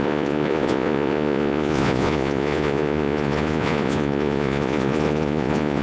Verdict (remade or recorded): remade